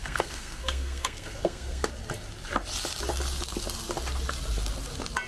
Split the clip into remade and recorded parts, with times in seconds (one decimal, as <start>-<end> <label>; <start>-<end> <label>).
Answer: 0.0-1.9 remade; 1.9-5.3 recorded

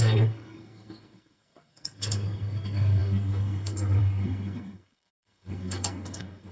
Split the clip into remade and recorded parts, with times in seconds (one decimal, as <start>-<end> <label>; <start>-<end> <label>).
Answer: 0.0-6.5 remade

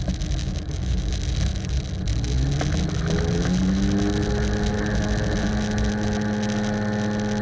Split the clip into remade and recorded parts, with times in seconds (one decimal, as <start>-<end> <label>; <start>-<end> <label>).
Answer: 0.0-0.4 recorded; 0.4-1.1 remade; 1.1-7.4 recorded

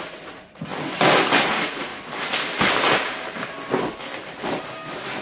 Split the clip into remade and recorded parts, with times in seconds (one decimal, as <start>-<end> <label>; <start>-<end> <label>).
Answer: 0.0-0.7 remade; 0.7-1.5 recorded; 1.5-1.9 remade; 1.9-5.2 recorded